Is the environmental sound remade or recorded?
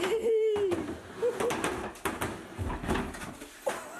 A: recorded